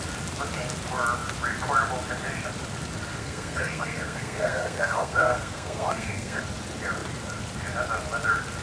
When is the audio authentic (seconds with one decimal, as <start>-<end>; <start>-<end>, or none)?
0.0-3.2; 6.4-8.6